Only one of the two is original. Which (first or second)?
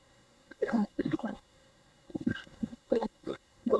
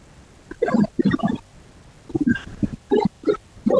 second